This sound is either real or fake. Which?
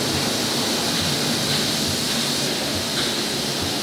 real